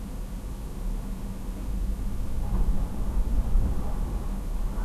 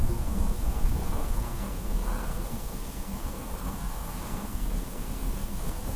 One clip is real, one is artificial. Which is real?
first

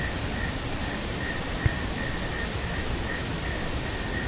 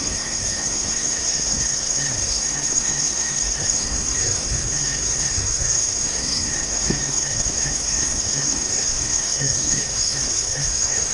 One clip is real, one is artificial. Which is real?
first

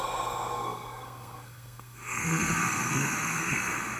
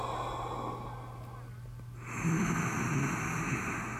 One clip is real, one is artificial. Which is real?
second